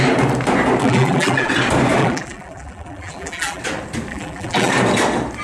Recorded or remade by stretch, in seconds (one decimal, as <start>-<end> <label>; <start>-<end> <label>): 0.0-0.8 recorded; 0.8-1.5 remade; 1.5-2.0 recorded; 2.0-3.6 remade; 3.6-4.1 recorded; 4.1-4.7 remade; 4.7-5.4 recorded